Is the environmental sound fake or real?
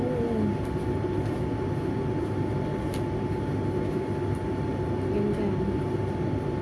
real